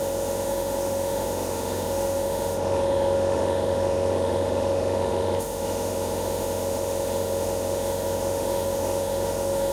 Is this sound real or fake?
fake